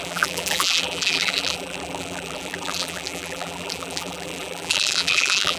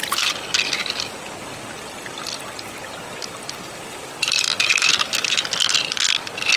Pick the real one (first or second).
second